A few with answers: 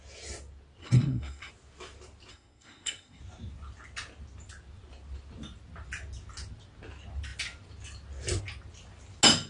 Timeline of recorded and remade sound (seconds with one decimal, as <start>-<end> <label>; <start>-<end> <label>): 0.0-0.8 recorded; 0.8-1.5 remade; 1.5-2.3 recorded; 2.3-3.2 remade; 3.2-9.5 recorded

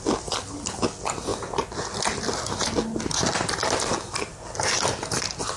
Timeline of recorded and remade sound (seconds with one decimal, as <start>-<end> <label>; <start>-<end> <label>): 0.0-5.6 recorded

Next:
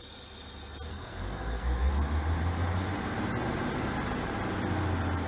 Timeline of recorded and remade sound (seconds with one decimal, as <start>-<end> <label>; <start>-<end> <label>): 0.0-0.9 recorded; 0.9-1.9 remade; 1.9-5.3 recorded

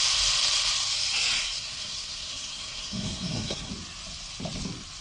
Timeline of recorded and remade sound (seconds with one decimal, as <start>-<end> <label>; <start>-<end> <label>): 0.0-1.4 recorded; 1.4-3.7 remade; 3.7-5.0 recorded

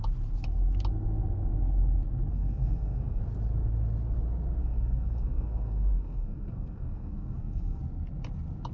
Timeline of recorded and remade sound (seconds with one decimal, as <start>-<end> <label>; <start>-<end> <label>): 0.0-2.3 recorded; 2.3-3.2 remade; 3.2-4.6 recorded; 4.6-7.8 remade; 7.8-8.7 recorded

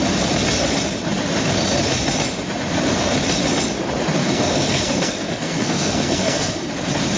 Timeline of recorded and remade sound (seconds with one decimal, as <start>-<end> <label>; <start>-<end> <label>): 0.0-4.2 recorded; 4.2-6.7 remade; 6.7-7.2 recorded